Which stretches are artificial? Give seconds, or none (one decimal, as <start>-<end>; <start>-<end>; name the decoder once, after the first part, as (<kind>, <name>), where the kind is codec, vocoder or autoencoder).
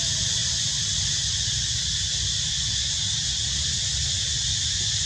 none